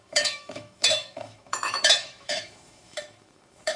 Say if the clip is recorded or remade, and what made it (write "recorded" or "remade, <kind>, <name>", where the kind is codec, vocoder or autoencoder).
remade, autoencoder, DAC-VAE